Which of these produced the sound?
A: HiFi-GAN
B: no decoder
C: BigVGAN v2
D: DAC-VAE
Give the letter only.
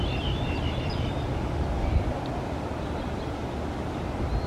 B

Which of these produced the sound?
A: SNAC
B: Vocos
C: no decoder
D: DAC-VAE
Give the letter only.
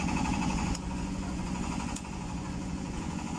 B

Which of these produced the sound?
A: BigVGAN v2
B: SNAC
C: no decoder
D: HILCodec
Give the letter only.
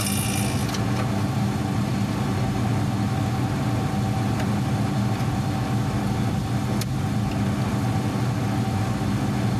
C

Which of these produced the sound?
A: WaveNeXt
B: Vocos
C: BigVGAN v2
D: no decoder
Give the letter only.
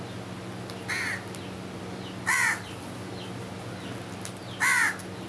D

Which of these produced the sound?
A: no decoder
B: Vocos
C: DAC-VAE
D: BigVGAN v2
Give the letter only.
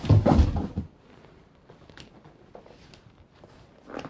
A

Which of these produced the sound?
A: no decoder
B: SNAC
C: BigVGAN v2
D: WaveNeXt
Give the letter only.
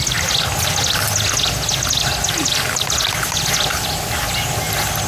A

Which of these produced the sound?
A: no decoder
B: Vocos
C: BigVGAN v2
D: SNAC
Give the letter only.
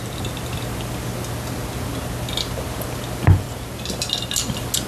A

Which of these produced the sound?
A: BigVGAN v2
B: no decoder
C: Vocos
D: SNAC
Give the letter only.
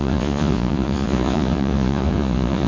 C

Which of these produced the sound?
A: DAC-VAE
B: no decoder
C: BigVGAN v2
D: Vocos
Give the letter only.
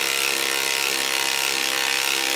B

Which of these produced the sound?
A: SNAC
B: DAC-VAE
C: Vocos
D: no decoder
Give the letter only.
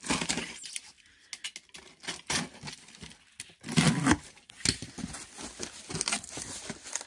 D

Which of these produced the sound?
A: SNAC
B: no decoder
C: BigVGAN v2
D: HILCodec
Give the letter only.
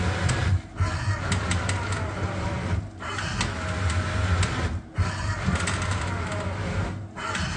B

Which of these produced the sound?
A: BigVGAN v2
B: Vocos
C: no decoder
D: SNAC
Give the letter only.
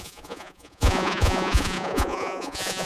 B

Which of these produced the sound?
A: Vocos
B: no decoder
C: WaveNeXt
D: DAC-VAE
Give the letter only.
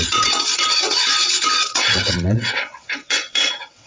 C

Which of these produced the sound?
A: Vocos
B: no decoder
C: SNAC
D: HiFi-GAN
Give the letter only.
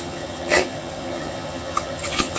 D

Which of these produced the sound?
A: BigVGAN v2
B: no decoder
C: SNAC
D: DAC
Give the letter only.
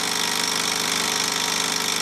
B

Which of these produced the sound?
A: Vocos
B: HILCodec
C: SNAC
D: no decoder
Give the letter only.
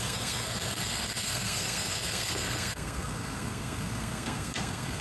C